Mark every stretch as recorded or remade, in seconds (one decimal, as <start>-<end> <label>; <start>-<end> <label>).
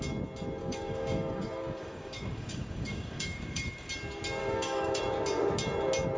0.0-0.6 recorded; 0.6-3.9 remade; 3.9-4.4 recorded; 4.4-5.0 remade; 5.0-6.2 recorded